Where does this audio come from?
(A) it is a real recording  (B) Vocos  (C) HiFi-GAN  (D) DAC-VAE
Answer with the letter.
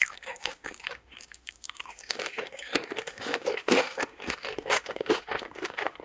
D